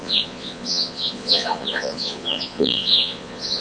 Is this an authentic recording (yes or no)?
no